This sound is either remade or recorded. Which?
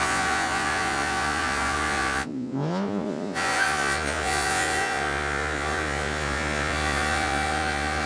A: remade